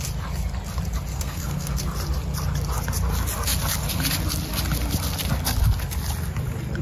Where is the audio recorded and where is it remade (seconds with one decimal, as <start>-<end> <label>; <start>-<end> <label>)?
0.0-1.1 recorded; 1.1-1.8 remade; 1.8-6.8 recorded